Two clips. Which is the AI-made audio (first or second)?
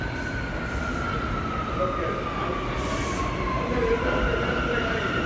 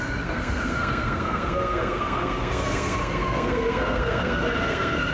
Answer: second